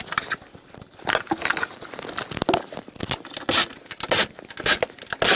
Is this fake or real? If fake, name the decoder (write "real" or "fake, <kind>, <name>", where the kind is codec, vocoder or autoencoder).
real